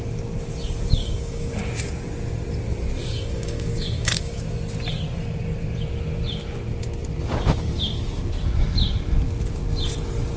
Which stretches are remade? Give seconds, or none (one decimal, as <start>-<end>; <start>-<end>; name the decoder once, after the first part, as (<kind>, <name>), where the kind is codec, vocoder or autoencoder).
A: 1.0-1.7 (codec, DAC); 3.0-4.4